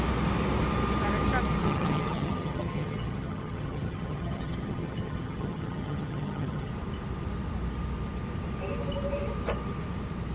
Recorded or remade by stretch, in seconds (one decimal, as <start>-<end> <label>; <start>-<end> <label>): 0.0-1.6 recorded; 1.6-6.7 remade; 6.7-10.3 recorded